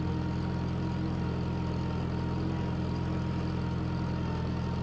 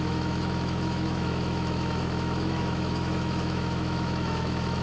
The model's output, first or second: second